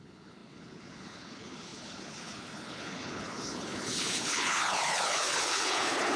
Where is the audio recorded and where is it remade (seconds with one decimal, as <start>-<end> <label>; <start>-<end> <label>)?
0.0-6.2 remade